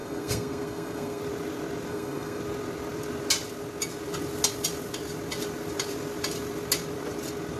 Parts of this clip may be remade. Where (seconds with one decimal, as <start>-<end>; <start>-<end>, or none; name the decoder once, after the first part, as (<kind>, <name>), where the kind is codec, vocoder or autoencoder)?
0.0-1.2 (codec, SNAC); 1.9-2.4